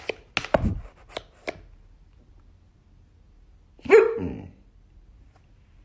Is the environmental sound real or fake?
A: real